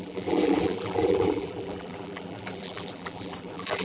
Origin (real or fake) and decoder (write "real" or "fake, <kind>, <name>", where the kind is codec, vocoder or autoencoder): fake, vocoder, BigVGAN v2